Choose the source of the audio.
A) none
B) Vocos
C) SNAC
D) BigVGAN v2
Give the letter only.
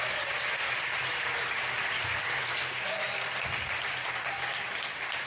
A